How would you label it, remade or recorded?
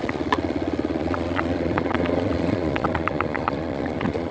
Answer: remade